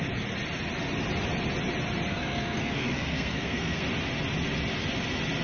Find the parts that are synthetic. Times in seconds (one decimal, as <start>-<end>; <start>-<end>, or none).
2.1-3.8